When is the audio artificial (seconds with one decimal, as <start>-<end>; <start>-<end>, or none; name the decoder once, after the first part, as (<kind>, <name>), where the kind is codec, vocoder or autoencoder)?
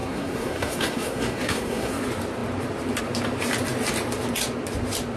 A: 0.0-2.0 (codec, SNAC)